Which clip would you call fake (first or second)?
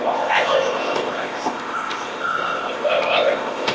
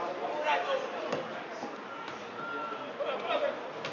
first